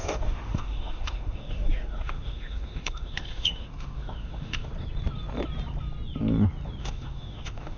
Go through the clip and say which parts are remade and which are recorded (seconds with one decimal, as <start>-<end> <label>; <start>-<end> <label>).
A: 0.0-4.7 remade; 4.7-6.8 recorded; 6.8-7.8 remade